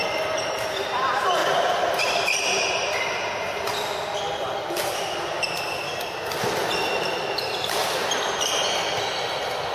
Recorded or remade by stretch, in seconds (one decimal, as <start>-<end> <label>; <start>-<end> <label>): 0.0-1.4 recorded; 1.4-3.7 remade; 3.7-9.7 recorded